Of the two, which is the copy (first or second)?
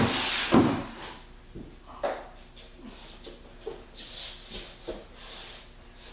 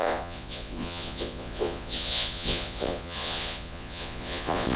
second